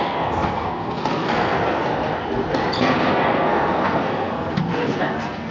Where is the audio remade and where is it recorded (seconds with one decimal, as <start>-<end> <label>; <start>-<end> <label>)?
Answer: 0.0-1.9 remade; 1.9-2.8 recorded; 2.8-5.5 remade